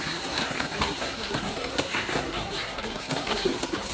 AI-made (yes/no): yes